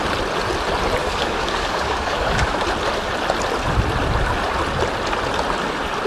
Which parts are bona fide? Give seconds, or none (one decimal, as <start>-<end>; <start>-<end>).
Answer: 0.0-1.0; 2.6-6.1